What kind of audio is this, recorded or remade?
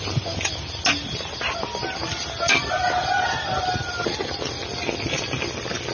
recorded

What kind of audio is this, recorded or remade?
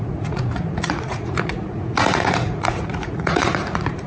remade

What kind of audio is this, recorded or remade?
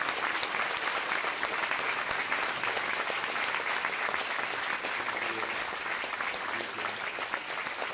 recorded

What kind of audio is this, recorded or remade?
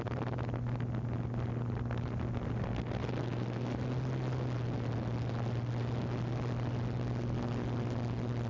recorded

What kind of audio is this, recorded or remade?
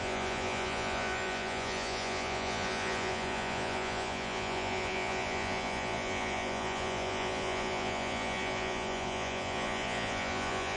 remade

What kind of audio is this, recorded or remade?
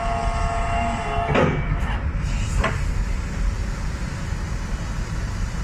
recorded